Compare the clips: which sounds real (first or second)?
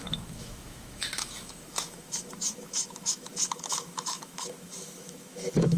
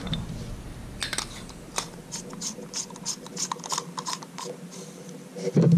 second